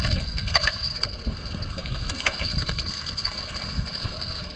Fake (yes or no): yes